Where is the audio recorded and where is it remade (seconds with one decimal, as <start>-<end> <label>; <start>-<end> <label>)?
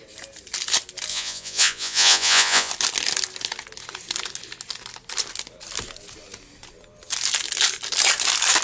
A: 0.0-1.1 recorded; 1.1-2.7 remade; 2.7-8.6 recorded